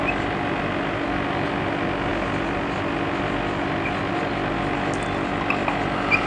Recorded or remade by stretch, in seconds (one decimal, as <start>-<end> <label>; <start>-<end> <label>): 0.0-6.3 recorded